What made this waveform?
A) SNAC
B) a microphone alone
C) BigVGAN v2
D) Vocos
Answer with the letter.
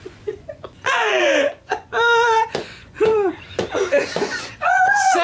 D